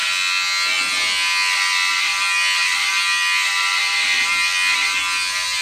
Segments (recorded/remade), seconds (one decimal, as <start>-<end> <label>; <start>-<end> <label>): 0.0-5.6 recorded